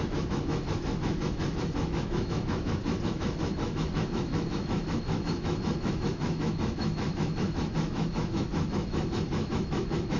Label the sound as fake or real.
fake